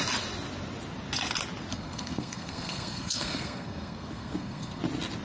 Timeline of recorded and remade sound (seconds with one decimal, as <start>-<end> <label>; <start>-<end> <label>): 0.0-1.7 recorded; 1.7-4.8 remade; 4.8-5.2 recorded